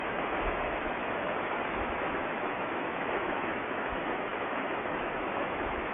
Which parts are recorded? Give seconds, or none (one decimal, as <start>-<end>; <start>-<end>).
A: none